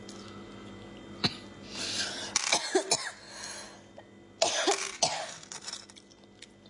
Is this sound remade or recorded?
recorded